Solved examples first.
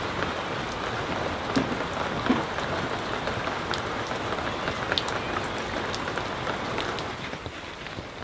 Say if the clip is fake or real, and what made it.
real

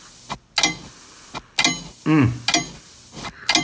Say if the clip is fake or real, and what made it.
real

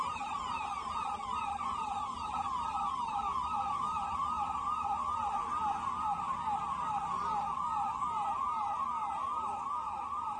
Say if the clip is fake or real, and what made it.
real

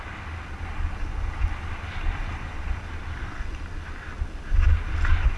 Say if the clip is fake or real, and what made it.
real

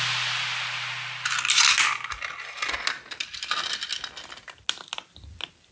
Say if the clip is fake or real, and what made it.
real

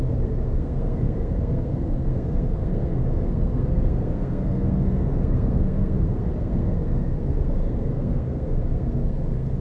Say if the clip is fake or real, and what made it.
fake, codec, SNAC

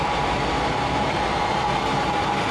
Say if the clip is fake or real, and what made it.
real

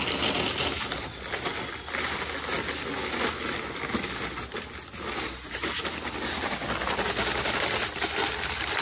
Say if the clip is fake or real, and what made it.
real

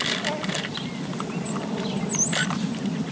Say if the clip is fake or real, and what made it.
real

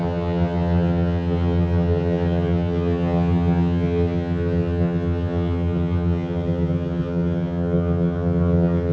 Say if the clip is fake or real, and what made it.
fake, vocoder, HiFi-GAN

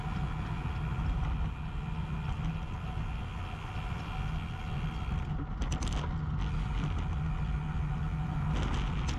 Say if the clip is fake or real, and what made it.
real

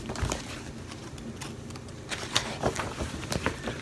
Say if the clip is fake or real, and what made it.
real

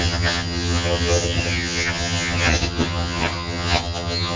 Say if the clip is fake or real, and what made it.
fake, vocoder, HiFi-GAN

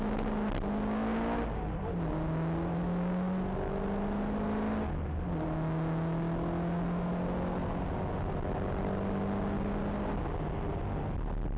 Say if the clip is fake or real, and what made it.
real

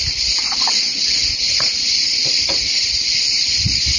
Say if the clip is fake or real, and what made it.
real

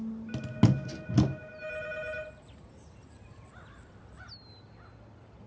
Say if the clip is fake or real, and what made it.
real